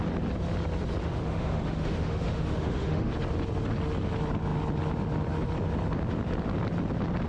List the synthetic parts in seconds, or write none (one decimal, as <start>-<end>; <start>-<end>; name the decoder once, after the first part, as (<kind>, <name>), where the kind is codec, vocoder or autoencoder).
1.0-3.1 (autoencoder, DAC-VAE)